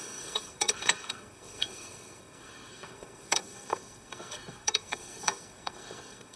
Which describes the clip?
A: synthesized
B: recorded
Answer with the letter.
A